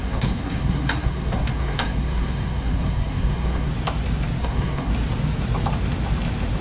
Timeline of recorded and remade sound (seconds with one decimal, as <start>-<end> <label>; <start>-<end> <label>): 0.0-3.7 remade; 3.7-4.4 recorded; 4.4-4.9 remade; 4.9-6.6 recorded